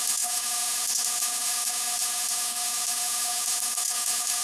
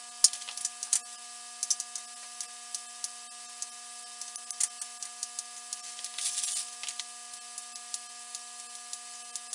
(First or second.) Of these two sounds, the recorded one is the second